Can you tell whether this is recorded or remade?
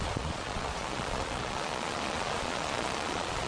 remade